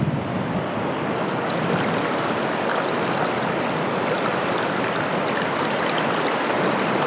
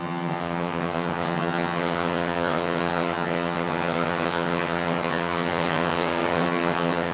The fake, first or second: second